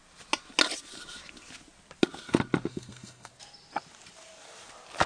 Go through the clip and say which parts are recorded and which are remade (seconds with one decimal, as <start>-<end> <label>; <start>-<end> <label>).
0.0-2.7 recorded; 2.7-3.3 remade; 3.3-5.1 recorded